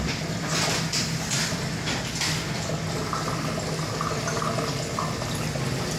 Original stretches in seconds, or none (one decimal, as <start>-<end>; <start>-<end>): 0.0-6.0